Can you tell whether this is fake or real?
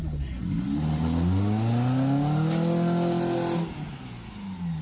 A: real